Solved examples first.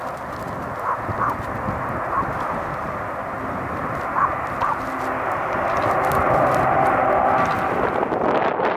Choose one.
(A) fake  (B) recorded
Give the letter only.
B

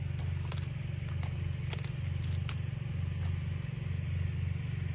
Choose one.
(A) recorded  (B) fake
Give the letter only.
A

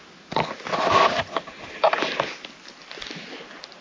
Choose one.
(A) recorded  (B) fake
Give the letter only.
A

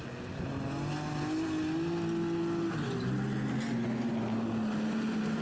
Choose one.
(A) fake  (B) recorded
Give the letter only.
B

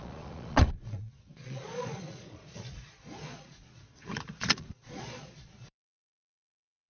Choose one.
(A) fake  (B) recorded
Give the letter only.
A